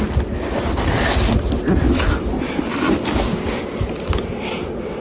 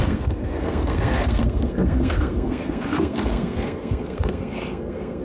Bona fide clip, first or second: first